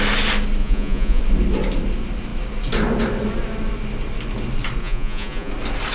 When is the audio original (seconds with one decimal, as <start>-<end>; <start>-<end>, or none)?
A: 0.0-0.6; 1.2-4.8; 5.5-5.9